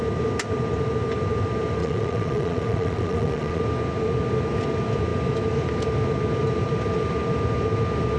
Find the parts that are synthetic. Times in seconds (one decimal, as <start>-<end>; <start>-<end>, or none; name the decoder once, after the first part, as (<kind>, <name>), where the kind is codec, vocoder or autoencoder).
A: 1.8-3.6 (vocoder, Vocos)